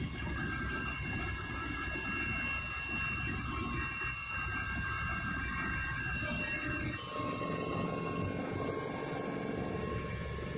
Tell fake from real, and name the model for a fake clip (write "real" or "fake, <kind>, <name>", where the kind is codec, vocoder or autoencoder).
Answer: real